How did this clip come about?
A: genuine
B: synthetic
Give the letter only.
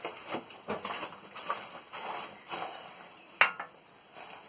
A